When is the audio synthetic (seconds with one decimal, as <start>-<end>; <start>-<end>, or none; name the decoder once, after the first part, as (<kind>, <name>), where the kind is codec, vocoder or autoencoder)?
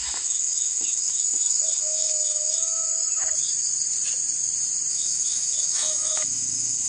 0.0-2.9 (autoencoder, DAC-VAE); 4.9-6.9